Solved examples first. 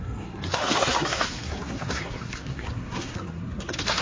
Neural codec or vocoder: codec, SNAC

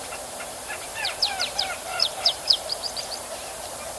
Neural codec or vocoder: vocoder, BigVGAN v2